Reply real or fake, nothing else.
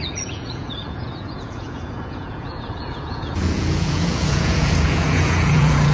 fake